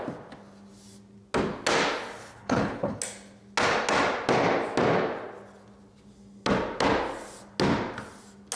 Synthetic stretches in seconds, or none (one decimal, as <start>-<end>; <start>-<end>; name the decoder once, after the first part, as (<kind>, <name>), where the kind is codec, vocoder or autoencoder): 2.2-3.0 (codec, HILCodec)